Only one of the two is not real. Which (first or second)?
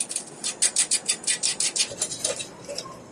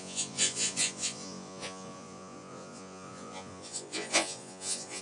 second